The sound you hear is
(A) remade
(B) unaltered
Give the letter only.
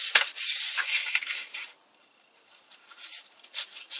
B